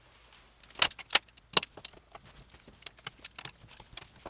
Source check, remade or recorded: recorded